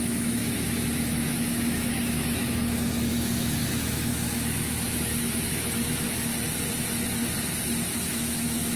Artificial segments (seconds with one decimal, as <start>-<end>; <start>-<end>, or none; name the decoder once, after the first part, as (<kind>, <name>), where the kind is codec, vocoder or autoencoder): 0.0-6.3 (autoencoder, DAC-VAE); 7.9-8.8